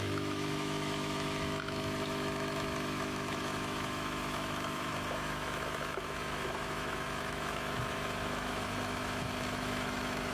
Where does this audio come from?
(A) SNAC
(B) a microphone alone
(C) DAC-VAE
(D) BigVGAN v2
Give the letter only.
C